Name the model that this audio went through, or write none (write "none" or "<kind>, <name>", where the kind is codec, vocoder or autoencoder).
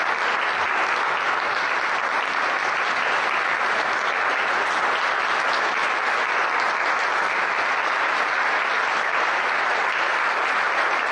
none